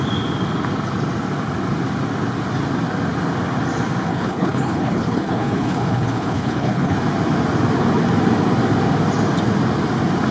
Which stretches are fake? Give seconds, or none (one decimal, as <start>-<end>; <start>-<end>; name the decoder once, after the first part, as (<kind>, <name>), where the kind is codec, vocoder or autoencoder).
4.1-7.0 (codec, HILCodec)